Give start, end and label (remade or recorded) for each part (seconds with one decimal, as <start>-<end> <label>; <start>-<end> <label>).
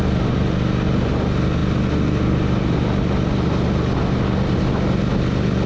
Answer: 0.0-5.7 recorded